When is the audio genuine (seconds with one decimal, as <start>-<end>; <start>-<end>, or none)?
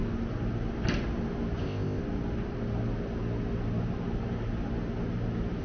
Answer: 0.0-1.6; 2.0-5.6